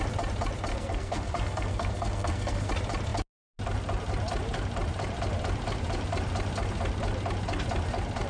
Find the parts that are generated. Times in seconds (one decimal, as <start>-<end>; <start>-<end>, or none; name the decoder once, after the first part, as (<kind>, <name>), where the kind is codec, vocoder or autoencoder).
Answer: 0.7-2.7 (codec, SNAC)